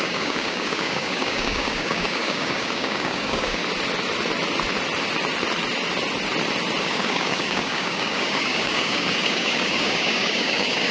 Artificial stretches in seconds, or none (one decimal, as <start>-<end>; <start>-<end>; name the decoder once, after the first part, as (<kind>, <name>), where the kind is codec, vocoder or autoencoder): 0.0-3.6 (codec, DAC); 6.8-10.9